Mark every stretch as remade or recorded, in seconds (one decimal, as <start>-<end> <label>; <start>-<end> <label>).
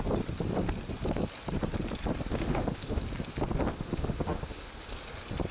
0.0-2.3 recorded; 2.3-3.0 remade; 3.0-3.7 recorded; 3.7-4.7 remade; 4.7-5.5 recorded